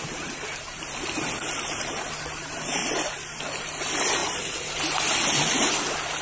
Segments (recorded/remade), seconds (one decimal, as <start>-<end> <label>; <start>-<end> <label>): 0.0-2.8 recorded; 2.8-3.4 remade; 3.4-6.2 recorded